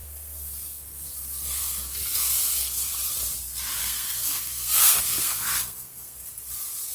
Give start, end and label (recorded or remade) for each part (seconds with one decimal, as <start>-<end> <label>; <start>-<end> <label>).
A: 0.0-2.9 remade; 2.9-3.8 recorded; 3.8-6.3 remade; 6.3-6.9 recorded